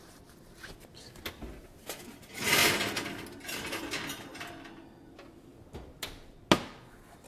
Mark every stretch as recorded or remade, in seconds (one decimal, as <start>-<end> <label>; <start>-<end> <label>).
0.0-7.3 recorded